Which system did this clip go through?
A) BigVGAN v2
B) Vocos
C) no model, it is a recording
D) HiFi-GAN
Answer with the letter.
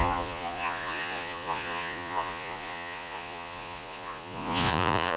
B